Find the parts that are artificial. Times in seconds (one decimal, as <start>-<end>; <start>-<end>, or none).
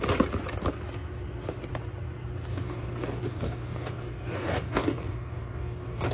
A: 2.5-6.1